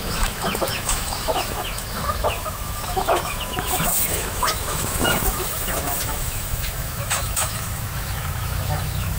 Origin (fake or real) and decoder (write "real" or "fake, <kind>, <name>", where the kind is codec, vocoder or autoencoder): fake, autoencoder, DAC-VAE